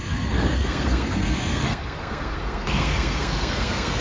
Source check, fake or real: fake